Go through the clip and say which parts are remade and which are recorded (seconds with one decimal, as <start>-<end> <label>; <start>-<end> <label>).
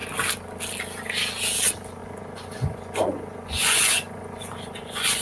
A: 0.0-2.0 recorded; 2.0-5.2 remade